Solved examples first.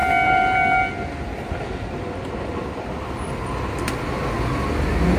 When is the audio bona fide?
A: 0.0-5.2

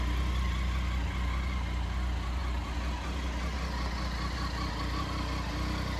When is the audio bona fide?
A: 0.0-6.0

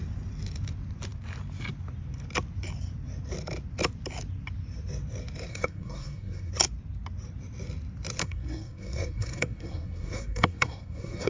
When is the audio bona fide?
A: 0.0-5.5; 6.5-8.2